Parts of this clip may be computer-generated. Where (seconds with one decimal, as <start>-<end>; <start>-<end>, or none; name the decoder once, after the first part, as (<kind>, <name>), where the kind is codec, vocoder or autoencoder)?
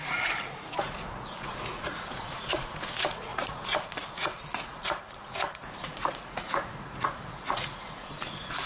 0.0-8.7 (vocoder, Vocos)